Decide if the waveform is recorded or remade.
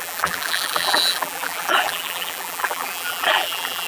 remade